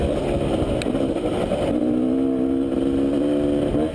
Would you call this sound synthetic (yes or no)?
no